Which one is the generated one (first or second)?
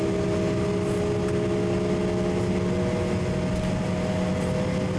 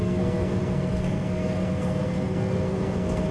second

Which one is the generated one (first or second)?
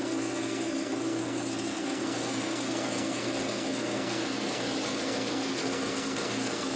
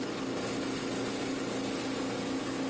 first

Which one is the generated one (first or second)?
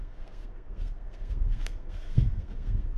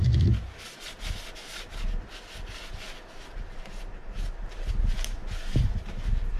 first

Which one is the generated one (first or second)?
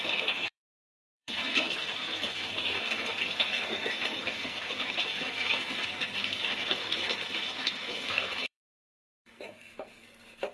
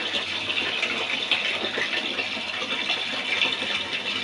first